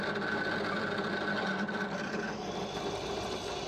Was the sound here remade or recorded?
recorded